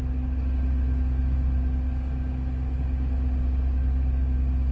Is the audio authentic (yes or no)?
yes